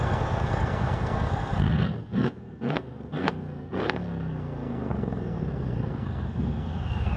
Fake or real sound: fake